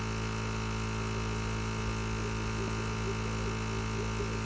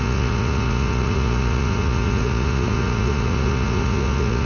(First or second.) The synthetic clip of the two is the second